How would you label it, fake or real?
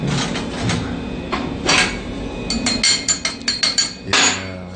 real